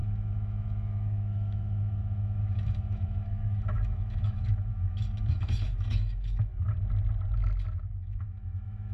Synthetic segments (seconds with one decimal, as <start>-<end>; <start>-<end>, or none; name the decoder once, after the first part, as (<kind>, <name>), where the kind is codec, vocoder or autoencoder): 0.0-6.5 (autoencoder, DAC-VAE); 7.8-8.9